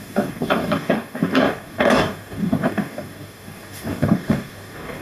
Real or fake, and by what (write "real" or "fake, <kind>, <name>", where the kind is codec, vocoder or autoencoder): fake, codec, DAC